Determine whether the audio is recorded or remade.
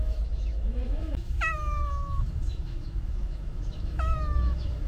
remade